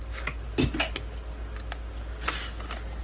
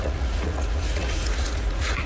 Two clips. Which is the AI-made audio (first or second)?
second